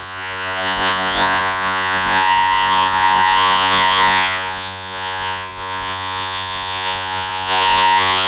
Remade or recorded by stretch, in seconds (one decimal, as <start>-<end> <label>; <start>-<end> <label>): 0.0-8.3 remade